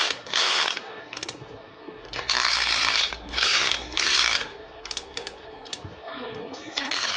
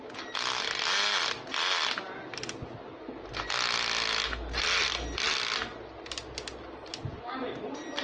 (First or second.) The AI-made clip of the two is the first